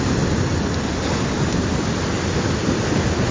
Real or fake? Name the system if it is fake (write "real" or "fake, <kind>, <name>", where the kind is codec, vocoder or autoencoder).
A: real